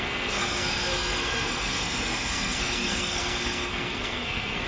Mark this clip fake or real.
fake